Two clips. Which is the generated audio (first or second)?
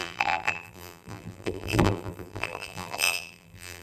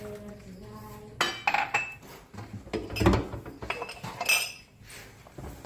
first